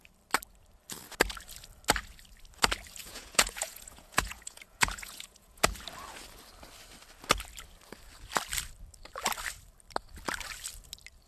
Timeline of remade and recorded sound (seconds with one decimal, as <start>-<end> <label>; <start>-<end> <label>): 0.0-3.0 recorded; 3.0-5.6 remade; 5.6-11.3 recorded